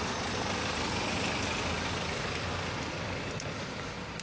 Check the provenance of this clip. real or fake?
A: real